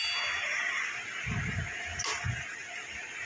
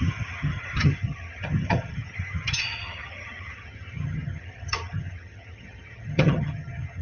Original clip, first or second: first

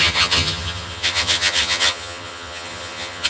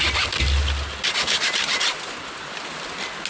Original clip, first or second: second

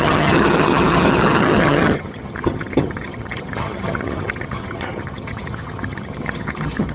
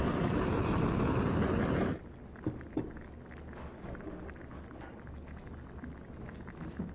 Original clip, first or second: second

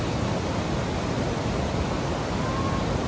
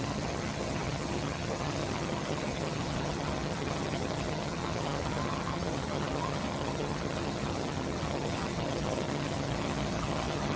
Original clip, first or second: first